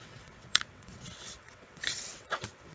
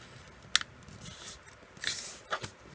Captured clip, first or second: second